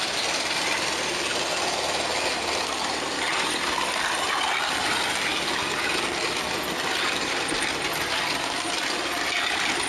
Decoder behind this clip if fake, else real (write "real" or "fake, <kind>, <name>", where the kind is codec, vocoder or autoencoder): real